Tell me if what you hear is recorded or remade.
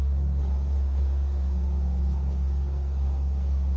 remade